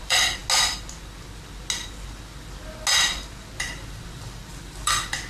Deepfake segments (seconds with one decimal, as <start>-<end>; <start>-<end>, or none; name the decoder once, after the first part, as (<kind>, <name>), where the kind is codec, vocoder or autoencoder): 0.0-0.4 (vocoder, BigVGAN v2); 3.6-5.3